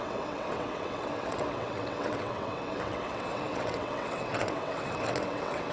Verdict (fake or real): fake